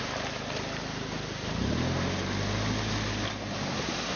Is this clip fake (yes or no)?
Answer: no